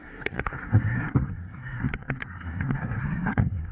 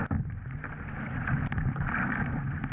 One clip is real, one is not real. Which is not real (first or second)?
first